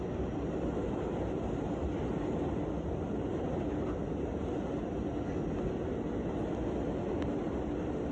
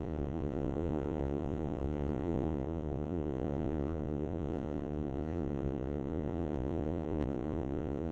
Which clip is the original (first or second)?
first